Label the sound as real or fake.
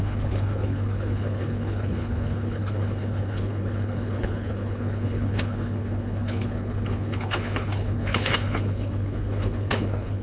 fake